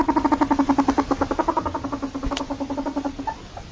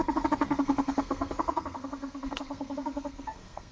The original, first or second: first